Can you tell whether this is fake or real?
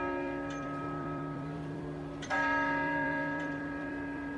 fake